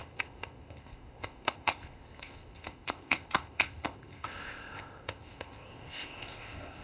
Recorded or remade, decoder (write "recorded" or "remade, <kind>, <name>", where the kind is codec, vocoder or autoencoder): remade, codec, ZipCodec